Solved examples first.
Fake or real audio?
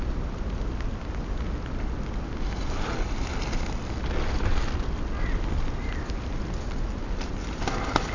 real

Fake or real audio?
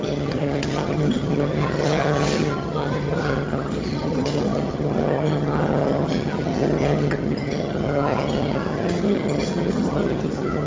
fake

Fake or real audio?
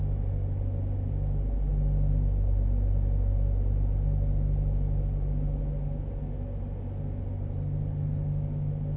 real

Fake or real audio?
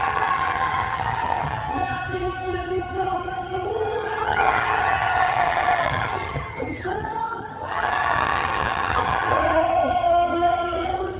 fake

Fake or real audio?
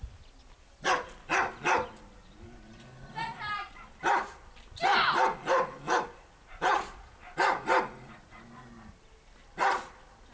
real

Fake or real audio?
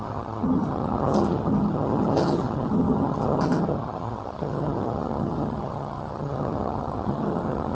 fake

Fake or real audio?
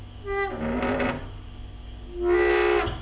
real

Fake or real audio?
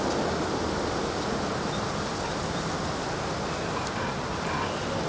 real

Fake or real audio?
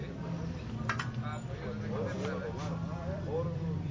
real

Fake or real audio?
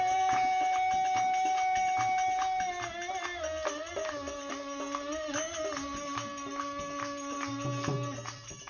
real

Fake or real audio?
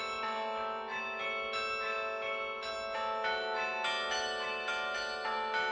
real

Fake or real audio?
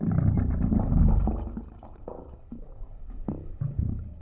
real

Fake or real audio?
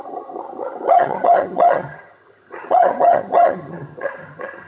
fake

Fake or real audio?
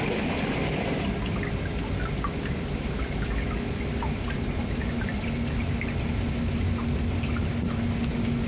real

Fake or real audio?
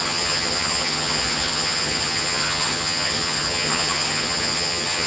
fake